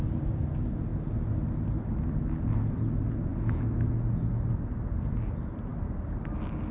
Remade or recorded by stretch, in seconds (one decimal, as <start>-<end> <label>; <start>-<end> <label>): 0.0-6.7 recorded